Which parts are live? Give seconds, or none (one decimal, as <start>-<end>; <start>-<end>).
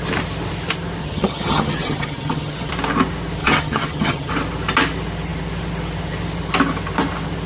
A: 0.0-1.0; 2.7-3.4; 4.3-7.5